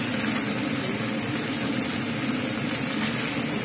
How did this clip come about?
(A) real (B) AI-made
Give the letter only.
A